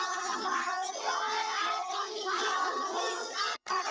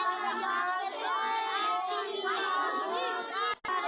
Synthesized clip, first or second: first